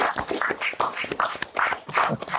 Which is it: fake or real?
real